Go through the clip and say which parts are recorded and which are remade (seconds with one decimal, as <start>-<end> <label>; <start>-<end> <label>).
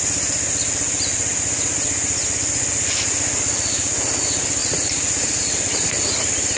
0.0-4.6 recorded; 4.6-5.4 remade; 5.4-6.6 recorded